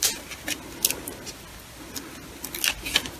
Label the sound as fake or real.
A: real